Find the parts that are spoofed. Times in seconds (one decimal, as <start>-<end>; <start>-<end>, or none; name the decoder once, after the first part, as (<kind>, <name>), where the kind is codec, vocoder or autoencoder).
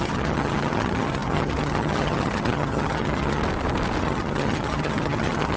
0.0-3.4 (vocoder, HiFi-GAN); 4.0-5.6